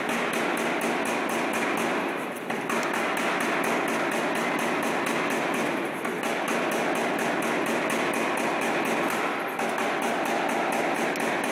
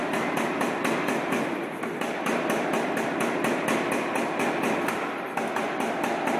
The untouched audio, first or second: first